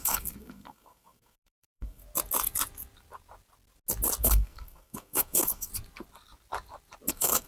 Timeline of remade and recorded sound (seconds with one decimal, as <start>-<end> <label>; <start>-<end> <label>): 0.0-2.0 remade; 2.0-4.2 recorded; 4.2-5.7 remade; 5.7-7.1 recorded; 7.1-7.5 remade

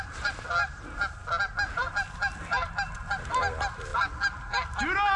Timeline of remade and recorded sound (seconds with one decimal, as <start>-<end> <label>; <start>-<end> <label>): 0.0-5.2 recorded

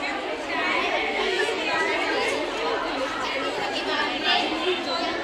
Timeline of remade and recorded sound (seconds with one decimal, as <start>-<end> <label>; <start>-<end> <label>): 0.0-1.0 recorded; 1.0-1.6 remade; 1.6-5.2 recorded

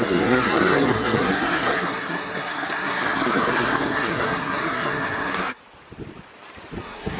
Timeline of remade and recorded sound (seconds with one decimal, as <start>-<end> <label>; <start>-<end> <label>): 0.0-5.6 remade; 5.6-6.8 recorded; 6.8-7.2 remade

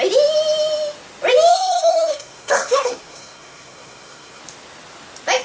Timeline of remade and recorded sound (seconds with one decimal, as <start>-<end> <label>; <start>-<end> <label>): 0.0-1.5 recorded; 1.5-4.4 remade; 4.4-5.4 recorded

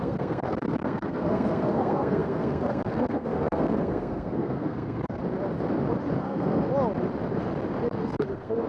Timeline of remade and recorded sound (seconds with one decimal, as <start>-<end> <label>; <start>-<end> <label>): 0.0-5.2 remade; 5.2-6.2 recorded; 6.2-6.7 remade; 6.7-7.9 recorded; 7.9-8.7 remade